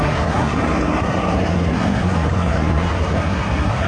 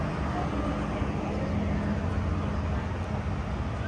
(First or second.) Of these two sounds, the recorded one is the second